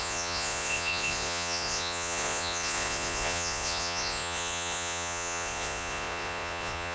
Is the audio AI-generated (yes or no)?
yes